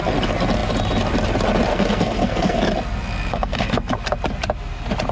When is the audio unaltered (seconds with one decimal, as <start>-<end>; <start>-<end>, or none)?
0.0-1.7; 2.6-3.3; 3.9-5.1